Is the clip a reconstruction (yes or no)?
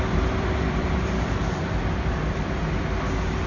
yes